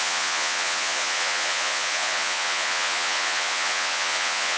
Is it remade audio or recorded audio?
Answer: remade